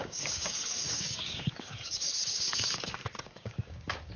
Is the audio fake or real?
fake